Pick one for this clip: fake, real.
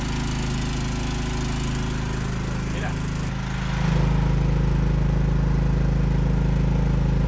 real